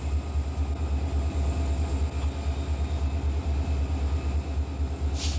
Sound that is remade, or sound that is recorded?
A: recorded